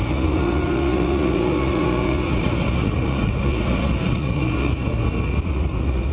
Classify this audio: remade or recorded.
remade